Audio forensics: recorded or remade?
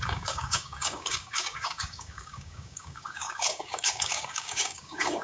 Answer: remade